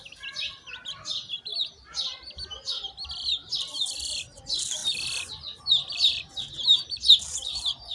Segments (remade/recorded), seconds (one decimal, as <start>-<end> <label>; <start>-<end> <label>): 0.0-1.5 recorded; 1.5-2.2 remade; 2.2-7.9 recorded